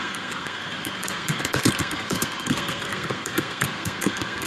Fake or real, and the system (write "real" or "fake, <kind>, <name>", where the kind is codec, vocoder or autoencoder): fake, codec, SNAC